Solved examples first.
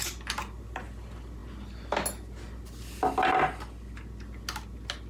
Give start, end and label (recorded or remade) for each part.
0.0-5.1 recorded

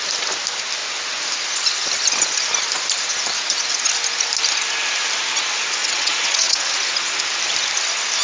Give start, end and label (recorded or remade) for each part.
0.0-5.8 recorded; 5.8-6.7 remade; 6.7-8.2 recorded

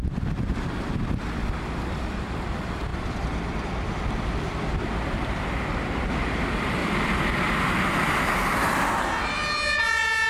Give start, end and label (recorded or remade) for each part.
0.0-2.9 recorded; 2.9-4.1 remade; 4.1-6.8 recorded; 6.8-7.4 remade; 7.4-10.3 recorded

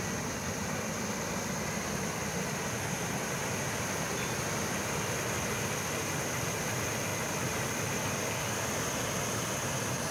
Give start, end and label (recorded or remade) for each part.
0.0-10.1 recorded